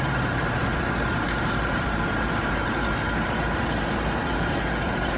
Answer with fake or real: fake